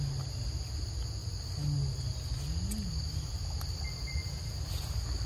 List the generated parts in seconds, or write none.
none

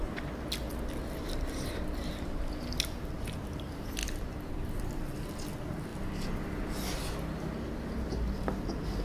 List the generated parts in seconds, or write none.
none

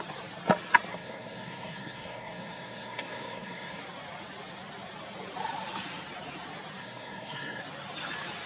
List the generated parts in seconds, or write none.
0.9-3.8 (codec, SNAC); 6.8-7.6

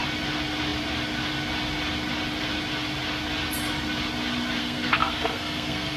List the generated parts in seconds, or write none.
4.6-6.0 (codec, SNAC)

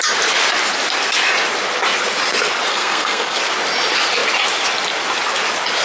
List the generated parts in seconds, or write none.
2.7-3.4 (codec, SNAC)

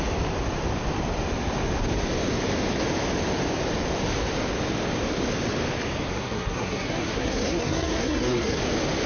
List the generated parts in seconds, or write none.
6.1-8.6 (codec, SNAC)

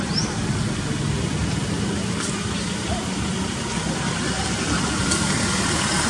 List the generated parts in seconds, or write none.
none